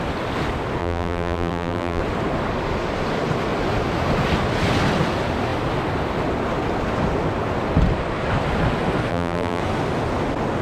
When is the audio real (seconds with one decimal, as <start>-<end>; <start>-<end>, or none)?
0.0-0.8; 2.0-9.1; 9.6-10.6